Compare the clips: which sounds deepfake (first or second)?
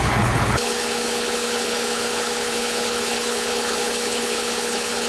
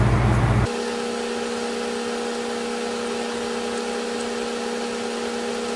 first